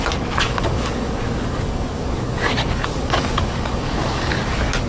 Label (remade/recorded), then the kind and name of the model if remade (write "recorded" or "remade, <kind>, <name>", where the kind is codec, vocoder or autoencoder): remade, codec, DAC